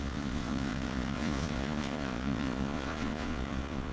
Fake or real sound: fake